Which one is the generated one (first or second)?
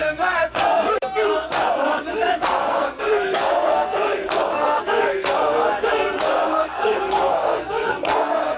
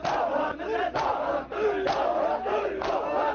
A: first